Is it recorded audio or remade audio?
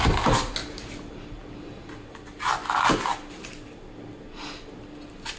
recorded